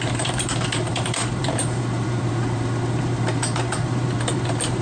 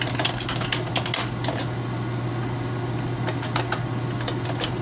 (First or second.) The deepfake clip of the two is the first